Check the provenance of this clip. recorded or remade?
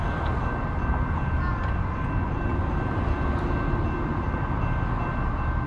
recorded